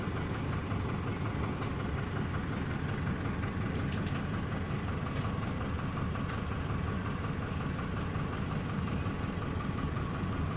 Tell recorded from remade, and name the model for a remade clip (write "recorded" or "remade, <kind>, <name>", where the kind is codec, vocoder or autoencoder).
recorded